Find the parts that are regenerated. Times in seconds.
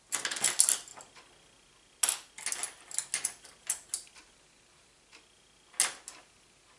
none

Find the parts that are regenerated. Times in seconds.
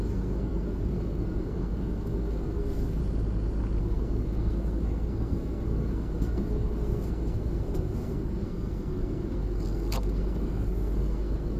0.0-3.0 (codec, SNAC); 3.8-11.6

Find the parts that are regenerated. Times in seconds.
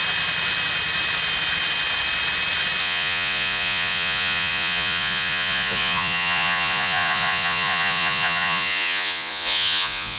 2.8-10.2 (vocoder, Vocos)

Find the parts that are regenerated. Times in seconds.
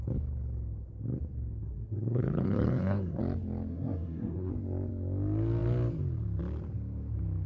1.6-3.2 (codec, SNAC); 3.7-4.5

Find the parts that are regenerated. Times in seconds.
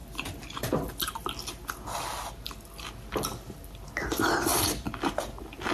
none